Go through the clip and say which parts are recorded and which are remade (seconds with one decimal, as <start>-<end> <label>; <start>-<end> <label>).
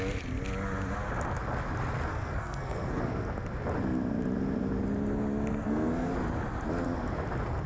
0.0-2.1 recorded; 2.1-3.0 remade; 3.0-5.5 recorded; 5.5-6.1 remade; 6.1-7.7 recorded